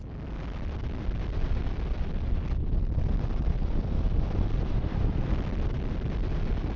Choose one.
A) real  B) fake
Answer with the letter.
A